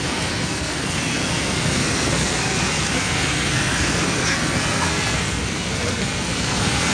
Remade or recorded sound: remade